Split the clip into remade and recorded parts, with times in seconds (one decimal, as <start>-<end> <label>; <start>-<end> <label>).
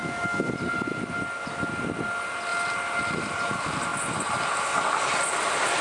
0.0-2.5 recorded; 2.5-3.0 remade; 3.0-5.8 recorded